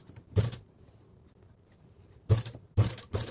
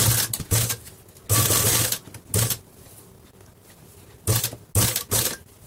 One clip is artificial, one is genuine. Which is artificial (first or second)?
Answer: first